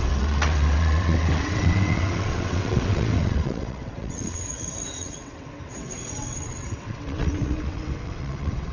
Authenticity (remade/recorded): remade